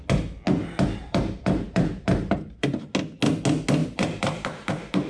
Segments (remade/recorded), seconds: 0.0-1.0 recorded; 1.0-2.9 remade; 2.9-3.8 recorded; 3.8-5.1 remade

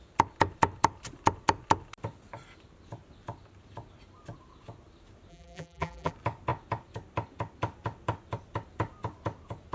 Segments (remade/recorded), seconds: 0.0-5.3 recorded; 5.3-6.1 remade; 6.1-9.7 recorded

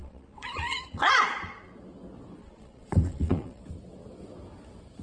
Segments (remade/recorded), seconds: 0.0-1.7 remade; 1.7-2.4 recorded; 2.4-3.6 remade; 3.6-5.0 recorded

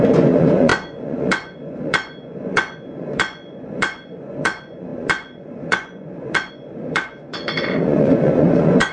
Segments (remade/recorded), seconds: 0.0-8.9 remade

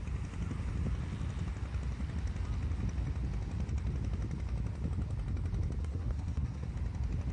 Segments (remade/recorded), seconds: 0.0-5.8 recorded; 5.8-6.7 remade; 6.7-7.3 recorded